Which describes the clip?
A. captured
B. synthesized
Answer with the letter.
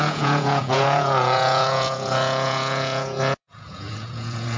B